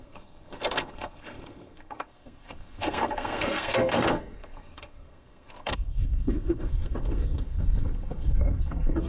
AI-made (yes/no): yes